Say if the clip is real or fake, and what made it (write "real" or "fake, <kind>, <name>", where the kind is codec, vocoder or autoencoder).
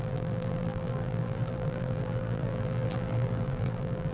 fake, vocoder, BigVGAN v2